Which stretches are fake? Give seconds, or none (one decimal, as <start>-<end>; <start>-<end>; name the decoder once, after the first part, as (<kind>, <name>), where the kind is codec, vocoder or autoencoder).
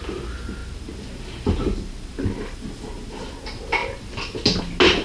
none